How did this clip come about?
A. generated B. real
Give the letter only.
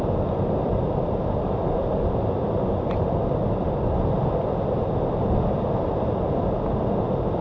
B